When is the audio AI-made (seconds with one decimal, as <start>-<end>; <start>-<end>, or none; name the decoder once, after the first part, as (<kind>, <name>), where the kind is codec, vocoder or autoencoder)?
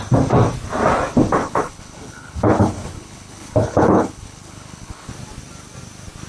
1.4-5.1 (codec, HILCodec)